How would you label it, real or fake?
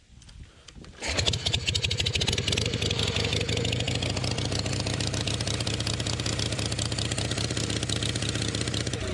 real